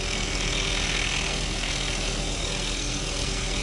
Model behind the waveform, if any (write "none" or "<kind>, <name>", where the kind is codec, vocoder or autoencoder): codec, SNAC